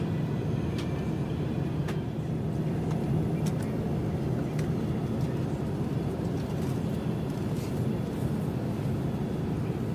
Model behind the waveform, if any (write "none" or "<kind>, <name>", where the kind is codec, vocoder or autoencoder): none